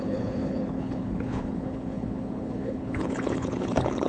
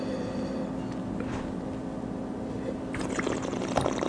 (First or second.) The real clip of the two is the second